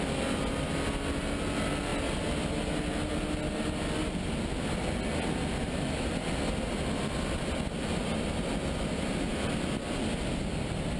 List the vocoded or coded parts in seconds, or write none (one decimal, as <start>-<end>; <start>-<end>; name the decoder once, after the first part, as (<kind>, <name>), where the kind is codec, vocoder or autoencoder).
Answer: none